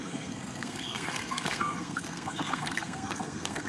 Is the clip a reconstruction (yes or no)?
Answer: yes